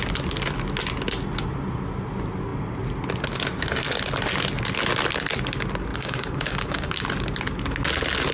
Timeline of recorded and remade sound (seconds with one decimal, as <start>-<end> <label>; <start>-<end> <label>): 0.0-5.9 recorded; 5.9-6.9 remade; 6.9-8.3 recorded

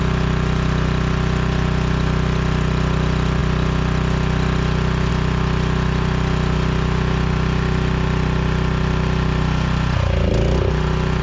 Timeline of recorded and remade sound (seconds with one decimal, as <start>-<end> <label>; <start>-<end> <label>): 0.0-11.2 recorded

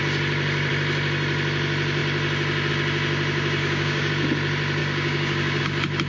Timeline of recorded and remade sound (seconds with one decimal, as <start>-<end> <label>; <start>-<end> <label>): 0.0-3.6 recorded; 3.6-4.1 remade; 4.1-4.8 recorded; 4.8-5.6 remade; 5.6-6.1 recorded